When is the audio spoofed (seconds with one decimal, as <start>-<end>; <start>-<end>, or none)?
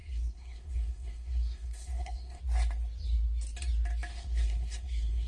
0.0-2.4; 4.1-5.3